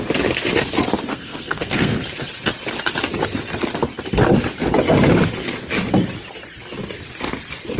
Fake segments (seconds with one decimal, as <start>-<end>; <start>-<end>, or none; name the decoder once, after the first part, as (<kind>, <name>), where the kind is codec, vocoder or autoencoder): 1.1-1.9 (codec, SNAC)